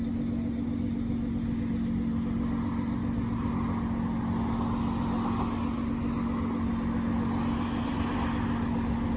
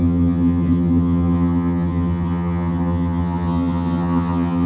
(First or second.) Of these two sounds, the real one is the first